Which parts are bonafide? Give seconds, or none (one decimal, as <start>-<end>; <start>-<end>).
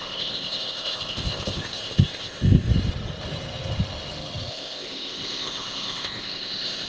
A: 2.7-4.5